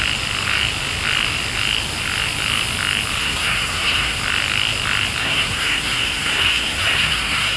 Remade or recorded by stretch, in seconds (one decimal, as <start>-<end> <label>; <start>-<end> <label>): 0.0-3.2 recorded; 3.2-4.2 remade; 4.2-5.2 recorded; 5.2-7.6 remade